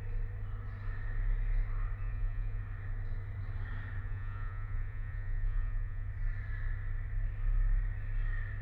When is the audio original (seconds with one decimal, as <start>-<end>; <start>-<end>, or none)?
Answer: 0.0-2.0; 2.6-4.0; 6.1-8.6